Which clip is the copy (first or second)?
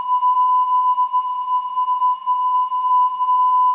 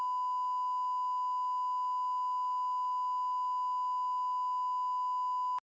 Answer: first